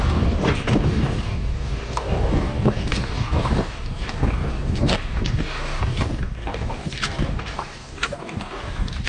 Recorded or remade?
remade